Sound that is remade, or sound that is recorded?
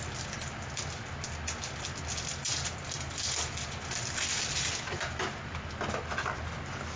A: recorded